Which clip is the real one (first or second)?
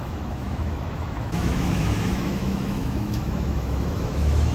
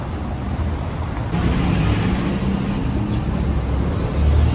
second